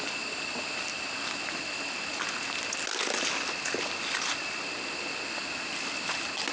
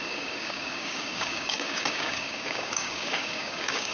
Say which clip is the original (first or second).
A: first